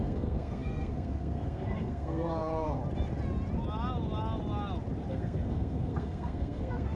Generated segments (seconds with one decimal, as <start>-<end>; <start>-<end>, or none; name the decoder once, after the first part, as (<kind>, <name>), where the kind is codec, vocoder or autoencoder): 0.0-2.8 (codec, SNAC); 5.1-7.0